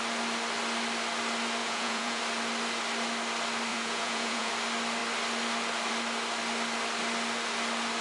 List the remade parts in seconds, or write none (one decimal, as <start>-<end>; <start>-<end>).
1.6-2.2; 3.7-4.5